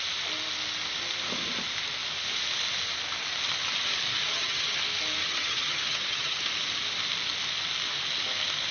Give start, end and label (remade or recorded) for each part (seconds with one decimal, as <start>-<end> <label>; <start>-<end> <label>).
0.0-4.3 recorded; 4.3-4.8 remade; 4.8-5.2 recorded; 5.2-6.4 remade; 6.4-8.7 recorded